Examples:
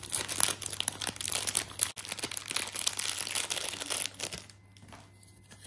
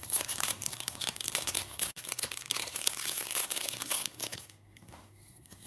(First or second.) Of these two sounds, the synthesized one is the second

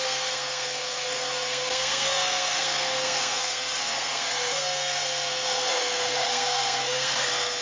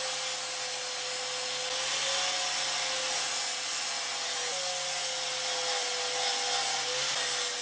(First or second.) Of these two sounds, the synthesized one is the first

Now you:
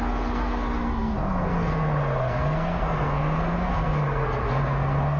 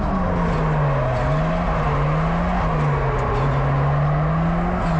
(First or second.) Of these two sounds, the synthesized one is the first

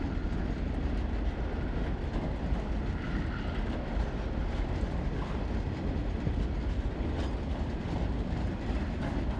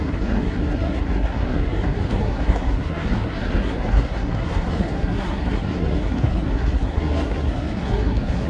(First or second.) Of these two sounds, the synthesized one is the second